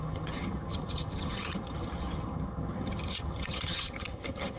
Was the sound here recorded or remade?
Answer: remade